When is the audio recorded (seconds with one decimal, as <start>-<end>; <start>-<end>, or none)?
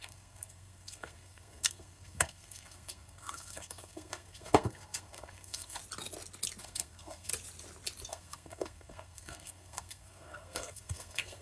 5.8-6.6; 7.3-8.1